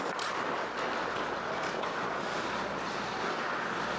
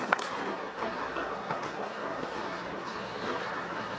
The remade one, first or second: second